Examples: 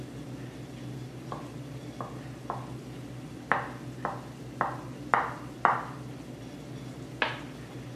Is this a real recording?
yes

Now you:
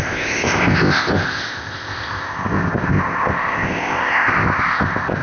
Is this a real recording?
no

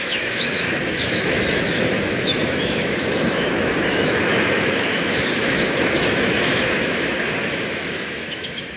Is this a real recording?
no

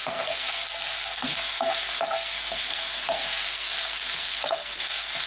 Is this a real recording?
no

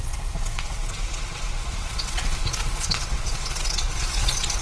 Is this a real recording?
no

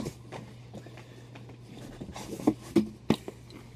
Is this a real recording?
yes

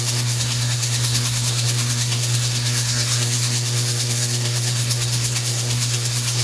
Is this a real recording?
no